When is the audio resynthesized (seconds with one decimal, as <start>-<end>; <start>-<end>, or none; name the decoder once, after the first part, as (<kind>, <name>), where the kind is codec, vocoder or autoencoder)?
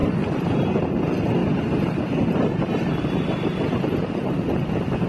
0.0-0.9 (vocoder, BigVGAN v2); 1.4-4.5